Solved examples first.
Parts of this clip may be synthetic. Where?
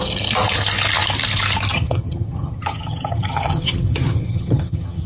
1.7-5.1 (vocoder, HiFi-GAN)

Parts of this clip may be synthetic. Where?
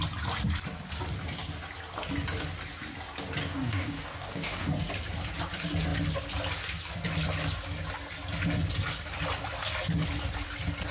3.4-4.7 (codec, DAC)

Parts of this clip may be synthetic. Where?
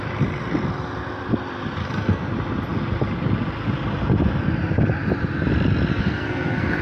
1.8-2.3 (codec, SNAC); 5.9-6.8